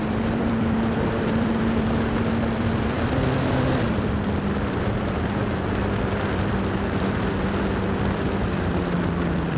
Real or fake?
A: fake